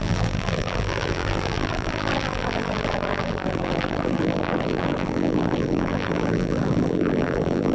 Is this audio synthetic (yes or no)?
yes